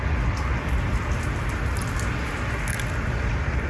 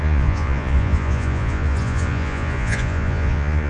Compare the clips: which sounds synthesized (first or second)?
second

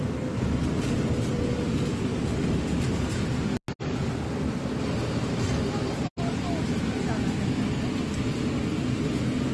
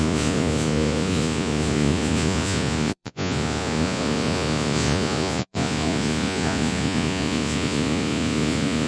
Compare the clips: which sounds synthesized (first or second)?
second